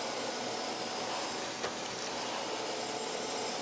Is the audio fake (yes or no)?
no